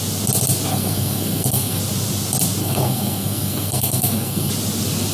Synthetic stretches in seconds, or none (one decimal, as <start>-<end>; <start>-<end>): 0.7-1.8; 2.6-4.5

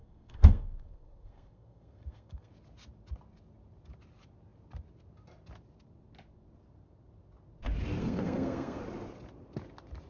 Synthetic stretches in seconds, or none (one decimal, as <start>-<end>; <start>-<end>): 0.0-2.5; 8.0-8.8

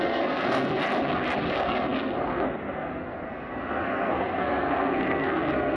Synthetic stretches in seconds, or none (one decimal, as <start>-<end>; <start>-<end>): 0.0-0.8; 1.5-5.8

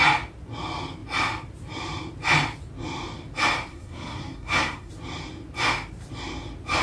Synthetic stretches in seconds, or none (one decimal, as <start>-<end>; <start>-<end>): 3.7-4.9

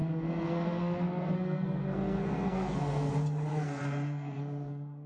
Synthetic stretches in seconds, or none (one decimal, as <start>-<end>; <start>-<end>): 0.0-3.1; 3.5-5.1

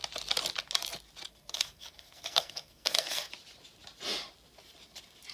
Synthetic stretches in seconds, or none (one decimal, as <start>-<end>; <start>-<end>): 1.3-3.3